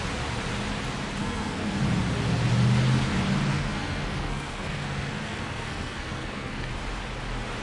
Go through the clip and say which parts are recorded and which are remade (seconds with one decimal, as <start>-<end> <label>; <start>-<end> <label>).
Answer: 0.0-1.2 recorded; 1.2-1.8 remade; 1.8-3.5 recorded; 3.5-6.7 remade; 6.7-7.6 recorded